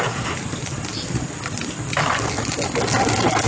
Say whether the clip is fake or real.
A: real